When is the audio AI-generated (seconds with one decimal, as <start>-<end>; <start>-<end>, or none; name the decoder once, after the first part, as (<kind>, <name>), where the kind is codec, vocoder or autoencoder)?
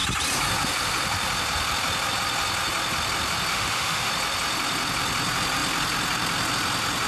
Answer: 3.5-4.1 (autoencoder, DAC-VAE)